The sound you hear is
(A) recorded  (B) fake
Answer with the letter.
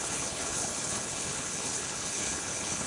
B